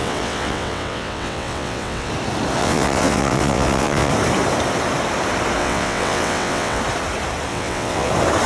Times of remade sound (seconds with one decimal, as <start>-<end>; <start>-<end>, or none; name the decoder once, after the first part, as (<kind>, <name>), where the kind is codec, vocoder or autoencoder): 0.0-2.1 (vocoder, WaveNeXt); 2.6-4.1; 5.6-6.8; 7.5-8.1